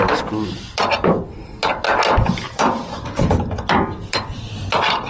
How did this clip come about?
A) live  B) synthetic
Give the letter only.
B